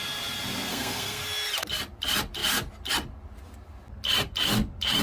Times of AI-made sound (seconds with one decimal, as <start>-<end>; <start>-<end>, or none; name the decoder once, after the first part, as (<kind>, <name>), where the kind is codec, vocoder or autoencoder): 0.7-1.2 (codec, SNAC)

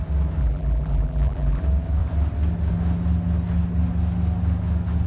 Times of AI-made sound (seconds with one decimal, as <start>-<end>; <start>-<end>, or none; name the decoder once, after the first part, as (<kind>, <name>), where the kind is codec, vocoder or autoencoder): 0.4-1.6 (vocoder, BigVGAN v2)

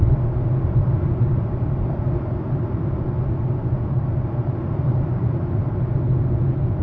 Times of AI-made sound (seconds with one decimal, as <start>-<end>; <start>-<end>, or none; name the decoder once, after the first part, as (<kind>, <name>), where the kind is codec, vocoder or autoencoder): 3.6-5.7 (vocoder, BigVGAN v2)